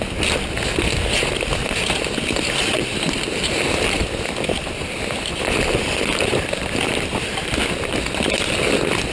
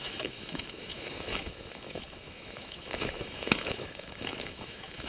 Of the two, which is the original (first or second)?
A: first